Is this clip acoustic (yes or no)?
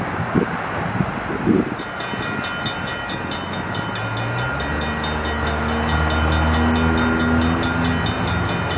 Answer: yes